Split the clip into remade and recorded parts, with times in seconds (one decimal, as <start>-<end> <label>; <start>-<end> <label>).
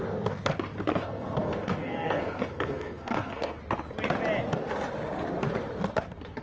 0.0-0.9 recorded; 0.9-3.6 remade; 3.6-6.4 recorded